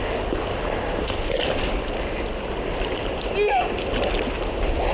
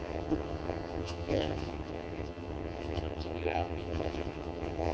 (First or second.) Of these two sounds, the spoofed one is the second